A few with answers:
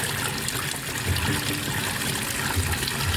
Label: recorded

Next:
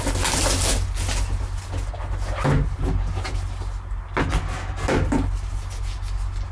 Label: recorded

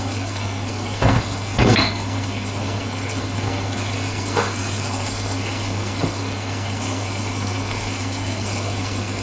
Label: remade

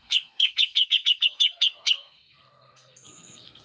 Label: remade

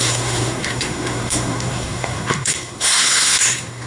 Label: remade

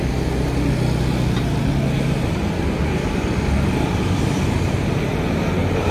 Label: recorded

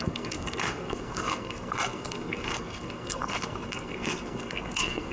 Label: remade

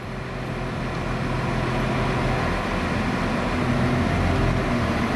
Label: recorded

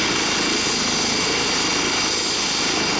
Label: recorded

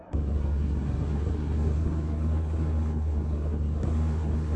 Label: remade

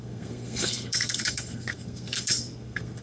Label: remade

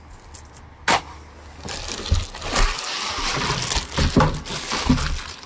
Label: recorded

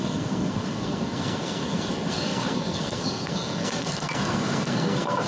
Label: remade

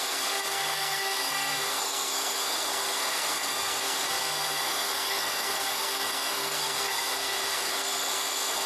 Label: remade